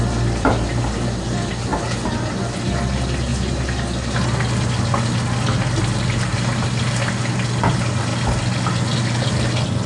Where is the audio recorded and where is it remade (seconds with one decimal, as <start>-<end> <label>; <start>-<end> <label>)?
0.0-1.7 remade; 1.7-2.4 recorded; 2.4-3.3 remade; 3.3-5.6 recorded; 5.6-6.3 remade; 6.3-7.1 recorded; 7.1-8.1 remade; 8.1-9.3 recorded; 9.3-9.9 remade

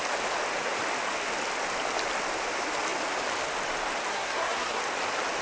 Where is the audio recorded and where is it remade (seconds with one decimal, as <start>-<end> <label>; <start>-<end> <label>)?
0.0-4.1 recorded; 4.1-4.8 remade; 4.8-5.4 recorded

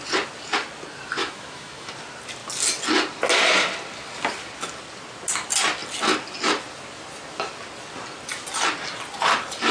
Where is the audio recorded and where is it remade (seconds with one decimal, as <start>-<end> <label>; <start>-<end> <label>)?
0.0-1.2 recorded; 1.2-1.9 remade; 1.9-9.7 recorded

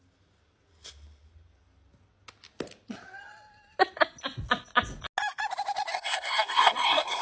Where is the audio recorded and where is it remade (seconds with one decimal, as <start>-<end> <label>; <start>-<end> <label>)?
0.0-5.9 recorded; 5.9-7.2 remade

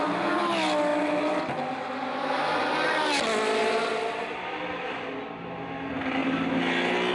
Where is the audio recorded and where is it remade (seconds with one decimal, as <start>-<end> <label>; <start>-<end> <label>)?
0.0-7.1 recorded